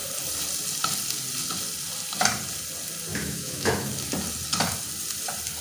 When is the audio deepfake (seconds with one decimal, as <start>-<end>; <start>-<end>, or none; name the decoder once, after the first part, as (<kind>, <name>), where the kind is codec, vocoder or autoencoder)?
3.1-3.9 (autoencoder, DAC-VAE)